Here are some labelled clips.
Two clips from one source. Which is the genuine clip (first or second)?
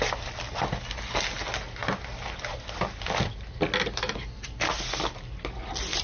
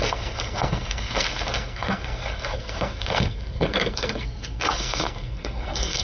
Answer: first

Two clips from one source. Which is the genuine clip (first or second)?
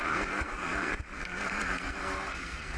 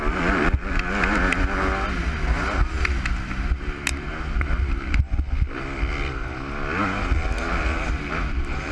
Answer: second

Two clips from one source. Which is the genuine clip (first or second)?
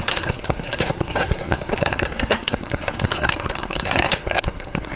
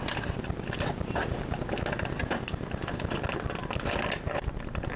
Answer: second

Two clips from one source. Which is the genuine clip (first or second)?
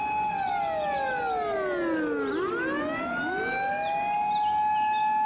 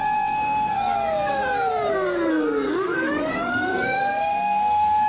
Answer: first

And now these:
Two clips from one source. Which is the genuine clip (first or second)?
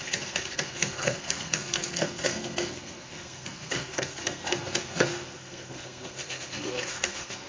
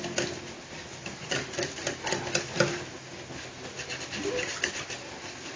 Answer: second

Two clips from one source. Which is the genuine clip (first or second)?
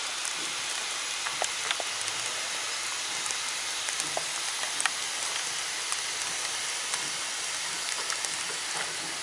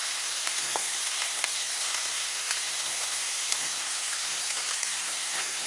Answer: first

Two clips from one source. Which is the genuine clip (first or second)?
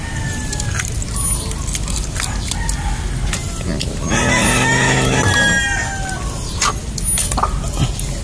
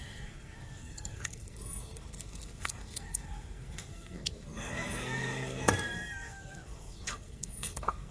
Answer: first